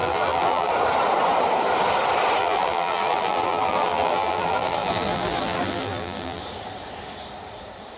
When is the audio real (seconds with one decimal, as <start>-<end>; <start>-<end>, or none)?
0.7-2.4; 6.4-8.0